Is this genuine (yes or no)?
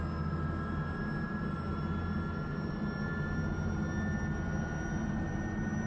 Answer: yes